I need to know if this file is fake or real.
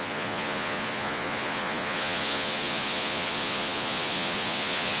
fake